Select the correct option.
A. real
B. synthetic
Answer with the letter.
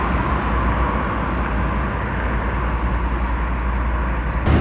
A